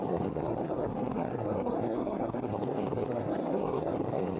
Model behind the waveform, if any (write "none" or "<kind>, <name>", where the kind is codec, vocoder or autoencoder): codec, SNAC